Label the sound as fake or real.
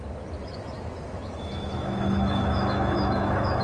fake